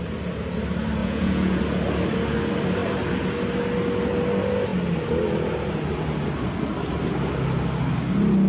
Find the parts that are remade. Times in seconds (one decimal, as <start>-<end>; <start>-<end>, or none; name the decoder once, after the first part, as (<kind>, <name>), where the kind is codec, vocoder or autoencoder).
1.0-1.6 (vocoder, Vocos)